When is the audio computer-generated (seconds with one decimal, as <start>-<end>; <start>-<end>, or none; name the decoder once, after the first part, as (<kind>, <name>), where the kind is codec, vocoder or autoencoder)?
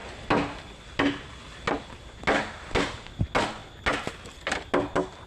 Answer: none